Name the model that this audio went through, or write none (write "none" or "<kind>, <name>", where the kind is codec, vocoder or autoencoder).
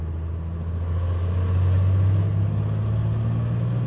none